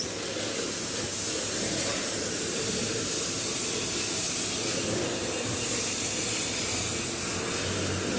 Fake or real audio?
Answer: real